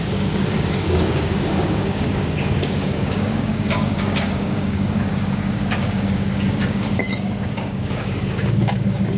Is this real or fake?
fake